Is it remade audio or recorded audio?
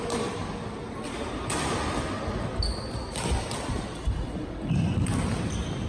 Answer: recorded